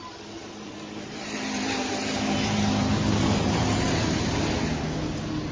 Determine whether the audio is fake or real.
real